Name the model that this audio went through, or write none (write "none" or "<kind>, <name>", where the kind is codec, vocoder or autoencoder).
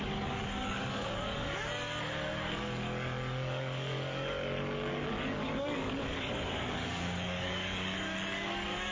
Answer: codec, DAC